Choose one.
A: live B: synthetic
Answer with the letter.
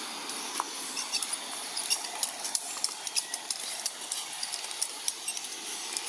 A